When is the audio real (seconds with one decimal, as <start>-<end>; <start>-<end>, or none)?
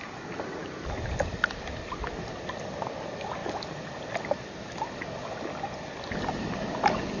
0.0-7.2